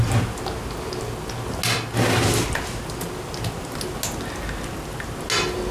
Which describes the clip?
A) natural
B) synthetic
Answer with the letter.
A